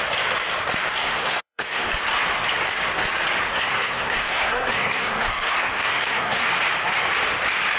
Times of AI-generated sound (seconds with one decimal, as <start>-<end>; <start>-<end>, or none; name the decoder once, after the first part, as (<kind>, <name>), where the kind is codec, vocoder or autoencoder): 1.0-1.9 (codec, SNAC); 3.5-6.4